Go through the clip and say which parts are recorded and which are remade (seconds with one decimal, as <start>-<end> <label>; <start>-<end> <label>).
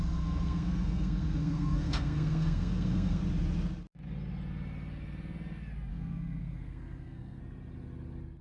0.0-3.2 remade; 3.2-5.9 recorded; 5.9-7.4 remade; 7.4-8.4 recorded